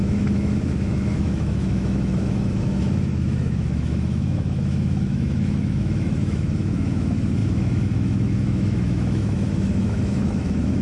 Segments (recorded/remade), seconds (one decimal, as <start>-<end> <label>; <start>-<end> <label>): 0.0-10.8 remade